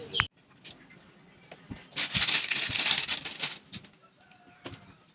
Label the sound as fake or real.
real